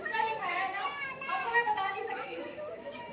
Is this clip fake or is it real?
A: fake